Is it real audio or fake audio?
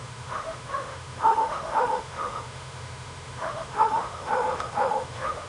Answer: fake